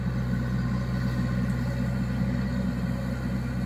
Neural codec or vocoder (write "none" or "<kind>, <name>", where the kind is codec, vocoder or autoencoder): none